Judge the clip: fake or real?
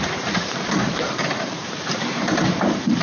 fake